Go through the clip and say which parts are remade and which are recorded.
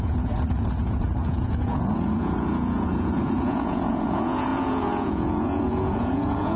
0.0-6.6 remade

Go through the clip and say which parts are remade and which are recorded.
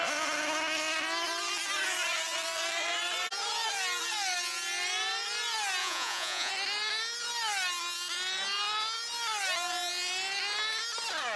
0.0-5.8 recorded; 5.8-6.5 remade; 6.5-11.4 recorded